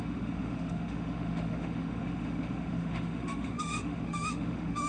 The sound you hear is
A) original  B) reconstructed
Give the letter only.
B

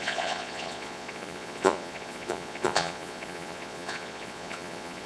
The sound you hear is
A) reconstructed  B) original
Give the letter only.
A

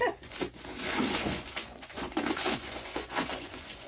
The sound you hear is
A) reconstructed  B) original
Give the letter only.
A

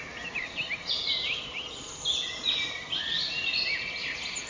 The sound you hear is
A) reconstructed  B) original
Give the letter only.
B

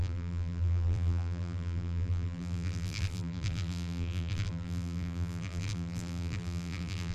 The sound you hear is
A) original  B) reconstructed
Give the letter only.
B